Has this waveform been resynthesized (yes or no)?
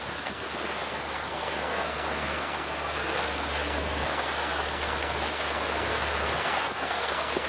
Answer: yes